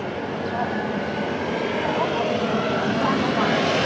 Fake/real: real